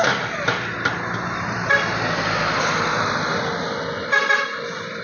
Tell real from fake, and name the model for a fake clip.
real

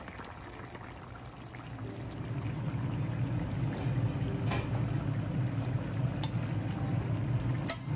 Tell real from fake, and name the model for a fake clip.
real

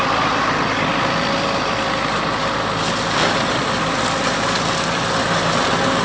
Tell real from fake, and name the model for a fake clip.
real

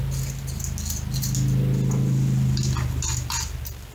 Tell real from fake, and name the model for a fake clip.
real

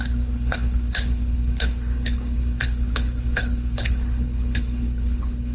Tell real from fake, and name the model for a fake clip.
fake, codec, HILCodec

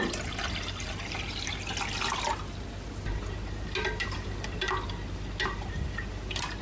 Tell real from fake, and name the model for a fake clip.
real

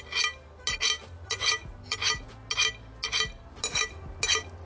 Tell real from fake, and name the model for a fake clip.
real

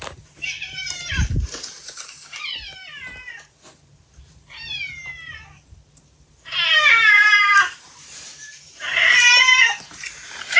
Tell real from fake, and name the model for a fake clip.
fake, vocoder, BigVGAN v2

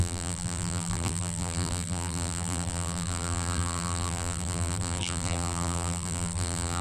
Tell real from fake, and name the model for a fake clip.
fake, vocoder, BigVGAN v2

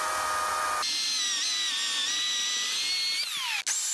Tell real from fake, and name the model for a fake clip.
real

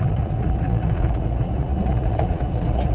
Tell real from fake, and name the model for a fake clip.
fake, vocoder, Vocos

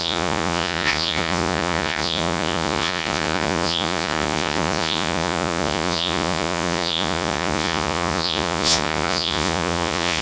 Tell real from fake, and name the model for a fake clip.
fake, vocoder, Vocos